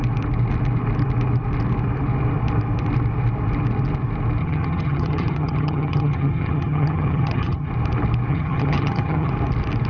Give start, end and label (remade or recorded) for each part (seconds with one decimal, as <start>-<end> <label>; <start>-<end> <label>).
0.0-4.4 recorded; 4.4-7.7 remade; 7.7-8.3 recorded; 8.3-9.3 remade; 9.3-9.9 recorded